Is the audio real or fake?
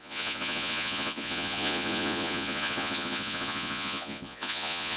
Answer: fake